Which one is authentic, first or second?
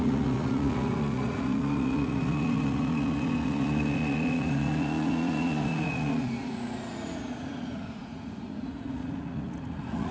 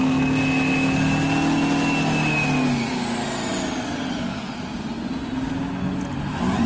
second